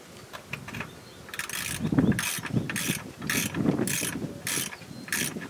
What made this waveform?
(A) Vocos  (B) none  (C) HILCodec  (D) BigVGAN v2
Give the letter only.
B